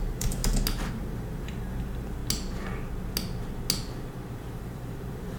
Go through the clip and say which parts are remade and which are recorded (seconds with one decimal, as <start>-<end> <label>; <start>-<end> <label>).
0.0-0.4 remade; 0.4-0.9 recorded; 0.9-2.2 remade; 2.2-4.3 recorded; 4.3-5.4 remade